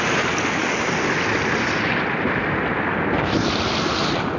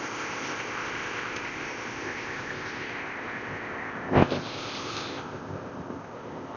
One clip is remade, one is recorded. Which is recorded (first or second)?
first